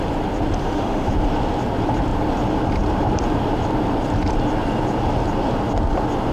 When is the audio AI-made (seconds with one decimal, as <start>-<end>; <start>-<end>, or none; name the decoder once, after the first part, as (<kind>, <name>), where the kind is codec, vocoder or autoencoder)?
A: 0.6-1.1 (autoencoder, DAC-VAE)